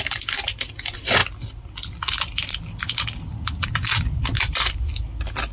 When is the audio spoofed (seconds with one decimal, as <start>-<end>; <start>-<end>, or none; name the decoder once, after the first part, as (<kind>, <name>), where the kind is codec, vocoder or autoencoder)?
none